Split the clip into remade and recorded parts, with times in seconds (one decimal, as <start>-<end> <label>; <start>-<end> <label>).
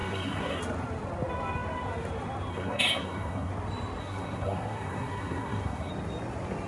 0.0-0.6 remade; 0.6-2.5 recorded; 2.5-3.5 remade; 3.5-4.0 recorded; 4.0-5.9 remade; 5.9-6.7 recorded